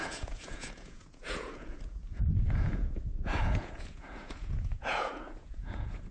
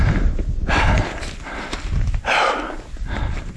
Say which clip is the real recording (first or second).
second